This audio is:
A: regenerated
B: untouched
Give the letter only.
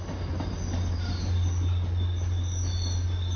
B